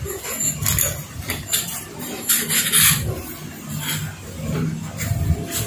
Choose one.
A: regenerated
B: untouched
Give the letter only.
B